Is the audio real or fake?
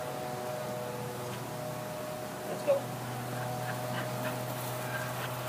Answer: real